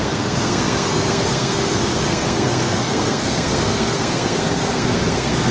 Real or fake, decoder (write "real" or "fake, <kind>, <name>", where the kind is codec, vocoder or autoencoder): fake, codec, SNAC